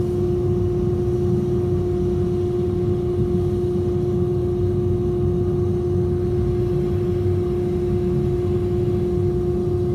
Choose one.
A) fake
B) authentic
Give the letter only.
B